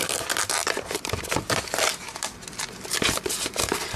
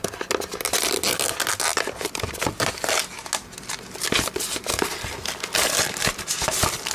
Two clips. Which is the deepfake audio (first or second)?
first